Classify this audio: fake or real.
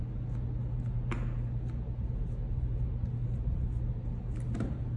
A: real